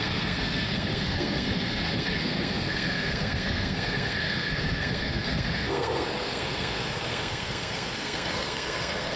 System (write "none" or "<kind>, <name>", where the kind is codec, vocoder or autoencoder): codec, SNAC